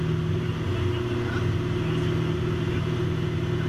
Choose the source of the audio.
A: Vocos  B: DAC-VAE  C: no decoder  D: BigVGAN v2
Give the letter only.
C